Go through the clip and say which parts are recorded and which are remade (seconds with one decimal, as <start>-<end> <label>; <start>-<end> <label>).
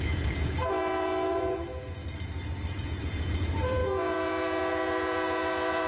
0.0-2.0 remade; 2.0-2.8 recorded; 2.8-5.9 remade